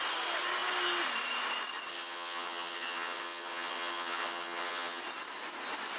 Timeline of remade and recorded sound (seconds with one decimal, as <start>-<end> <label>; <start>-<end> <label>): 0.0-1.9 recorded; 1.9-5.0 remade; 5.0-6.0 recorded